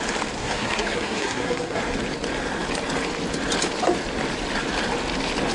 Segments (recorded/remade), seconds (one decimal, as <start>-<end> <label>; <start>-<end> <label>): 0.0-0.4 recorded; 0.4-1.8 remade; 1.8-5.5 recorded